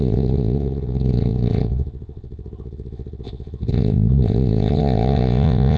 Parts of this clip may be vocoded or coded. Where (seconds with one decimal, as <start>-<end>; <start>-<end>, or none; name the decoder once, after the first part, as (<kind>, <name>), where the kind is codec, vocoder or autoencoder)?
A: 0.0-5.8 (vocoder, Vocos)